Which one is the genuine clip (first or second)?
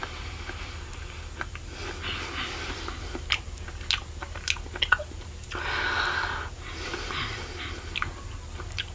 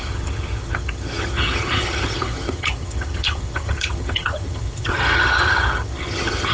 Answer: first